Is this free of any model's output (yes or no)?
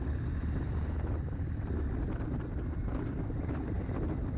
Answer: no